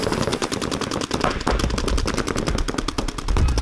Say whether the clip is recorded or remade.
recorded